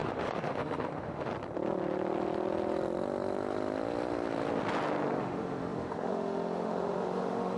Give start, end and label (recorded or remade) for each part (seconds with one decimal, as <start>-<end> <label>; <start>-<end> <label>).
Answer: 0.0-1.3 remade; 1.3-5.2 recorded; 5.2-7.6 remade